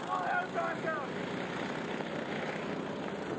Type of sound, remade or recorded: recorded